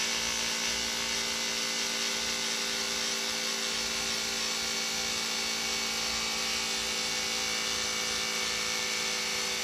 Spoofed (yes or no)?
no